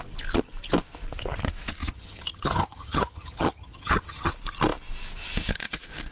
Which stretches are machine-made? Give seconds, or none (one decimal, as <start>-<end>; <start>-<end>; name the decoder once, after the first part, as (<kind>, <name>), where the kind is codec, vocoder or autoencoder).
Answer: 1.8-4.3 (vocoder, HiFi-GAN)